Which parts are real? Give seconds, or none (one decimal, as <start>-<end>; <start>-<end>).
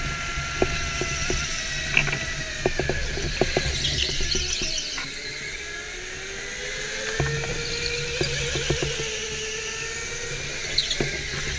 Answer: 0.0-3.0; 3.7-6.6; 7.7-11.6